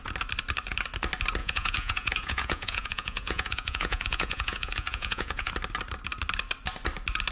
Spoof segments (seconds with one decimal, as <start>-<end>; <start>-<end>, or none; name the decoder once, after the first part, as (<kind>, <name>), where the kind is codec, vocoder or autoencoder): 1.4-5.5 (vocoder, Vocos)